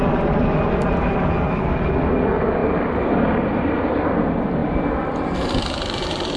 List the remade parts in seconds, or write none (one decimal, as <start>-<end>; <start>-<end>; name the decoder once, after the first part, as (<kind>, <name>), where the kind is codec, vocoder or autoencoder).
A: none